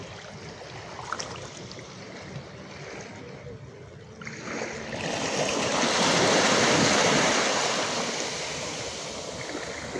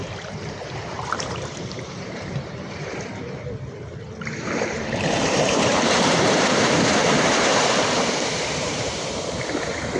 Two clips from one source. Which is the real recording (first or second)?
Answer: first